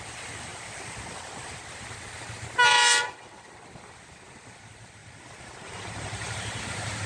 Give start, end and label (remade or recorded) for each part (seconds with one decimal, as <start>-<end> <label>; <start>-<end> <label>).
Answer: 0.0-5.0 recorded; 5.0-6.6 remade; 6.6-7.1 recorded